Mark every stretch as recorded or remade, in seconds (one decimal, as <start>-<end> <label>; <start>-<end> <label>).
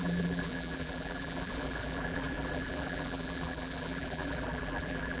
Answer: 0.0-5.2 remade